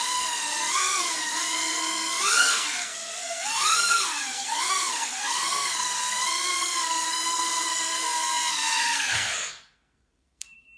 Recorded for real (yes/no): no